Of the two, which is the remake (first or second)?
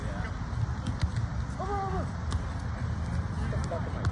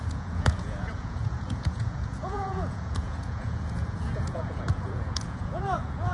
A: second